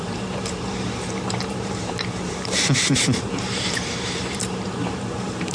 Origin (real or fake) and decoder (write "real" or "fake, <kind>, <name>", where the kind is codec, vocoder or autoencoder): fake, vocoder, BigVGAN v2